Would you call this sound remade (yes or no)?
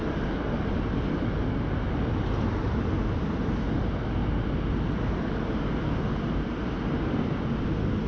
no